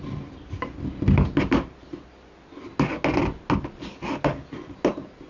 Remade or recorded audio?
recorded